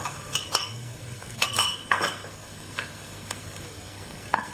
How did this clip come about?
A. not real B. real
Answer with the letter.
A